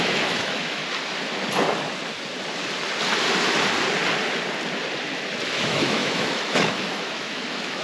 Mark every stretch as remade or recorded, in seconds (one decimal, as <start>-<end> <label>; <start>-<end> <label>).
0.0-0.8 remade; 0.8-5.5 recorded; 5.5-7.8 remade

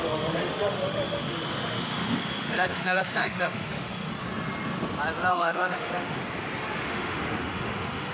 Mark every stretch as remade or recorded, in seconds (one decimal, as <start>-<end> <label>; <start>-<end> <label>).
0.0-4.1 remade; 4.1-5.3 recorded; 5.3-6.2 remade; 6.2-6.8 recorded; 6.8-8.1 remade

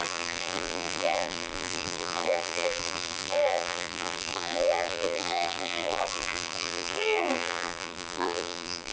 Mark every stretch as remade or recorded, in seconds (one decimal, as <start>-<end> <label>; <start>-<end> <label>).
0.0-8.9 remade

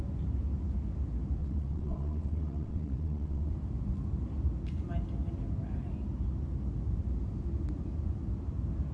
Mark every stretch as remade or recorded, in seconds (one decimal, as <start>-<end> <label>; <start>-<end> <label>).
0.0-1.4 recorded; 1.4-3.5 remade; 3.5-8.9 recorded

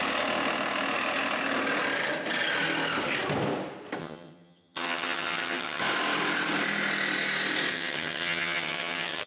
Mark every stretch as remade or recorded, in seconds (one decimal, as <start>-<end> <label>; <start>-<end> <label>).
0.0-4.0 recorded; 4.0-5.8 remade; 5.8-7.7 recorded; 7.7-9.3 remade

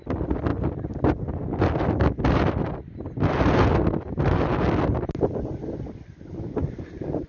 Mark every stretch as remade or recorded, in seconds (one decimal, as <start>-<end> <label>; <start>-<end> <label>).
0.0-7.3 recorded

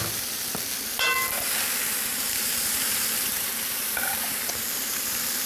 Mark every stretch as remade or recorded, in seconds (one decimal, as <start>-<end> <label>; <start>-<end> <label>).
0.0-2.1 recorded; 2.1-4.6 remade; 4.6-5.5 recorded